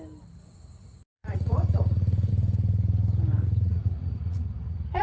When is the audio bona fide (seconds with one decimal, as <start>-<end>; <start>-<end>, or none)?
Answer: 0.0-0.8; 2.3-3.3